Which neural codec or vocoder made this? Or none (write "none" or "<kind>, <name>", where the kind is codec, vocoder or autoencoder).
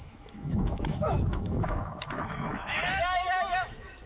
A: autoencoder, DAC-VAE